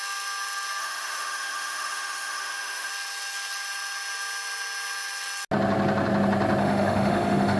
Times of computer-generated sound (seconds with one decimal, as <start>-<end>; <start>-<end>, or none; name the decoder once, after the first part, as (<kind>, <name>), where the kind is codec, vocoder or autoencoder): 0.8-2.9 (autoencoder, DAC-VAE); 6.6-7.6